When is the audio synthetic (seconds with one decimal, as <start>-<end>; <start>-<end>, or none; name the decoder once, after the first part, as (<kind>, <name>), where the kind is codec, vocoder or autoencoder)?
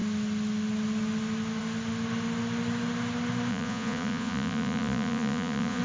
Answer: 3.5-5.8 (vocoder, Vocos)